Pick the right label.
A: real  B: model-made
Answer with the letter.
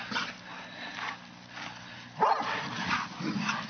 A